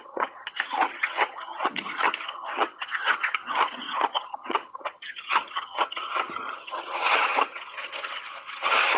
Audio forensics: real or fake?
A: fake